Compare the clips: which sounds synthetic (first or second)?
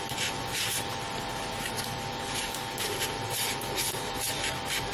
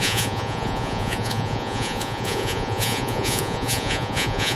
second